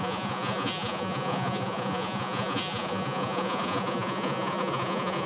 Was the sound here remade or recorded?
remade